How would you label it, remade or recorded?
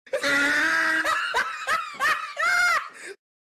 recorded